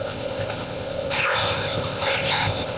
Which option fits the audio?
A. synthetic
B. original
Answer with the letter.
A